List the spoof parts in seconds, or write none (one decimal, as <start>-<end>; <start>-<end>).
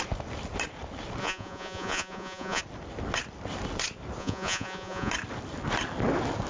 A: 1.2-2.6; 4.2-5.1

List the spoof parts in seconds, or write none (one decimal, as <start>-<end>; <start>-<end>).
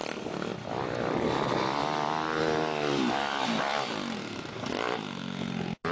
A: none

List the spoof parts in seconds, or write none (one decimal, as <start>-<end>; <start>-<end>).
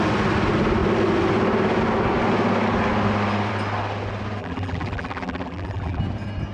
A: 4.4-6.0